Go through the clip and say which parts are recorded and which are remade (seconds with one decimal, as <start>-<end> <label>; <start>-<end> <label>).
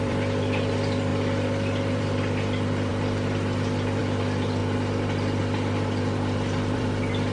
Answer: 0.0-1.1 remade; 1.1-2.0 recorded; 2.0-2.9 remade; 2.9-4.0 recorded; 4.0-4.6 remade; 4.6-5.4 recorded; 5.4-7.3 remade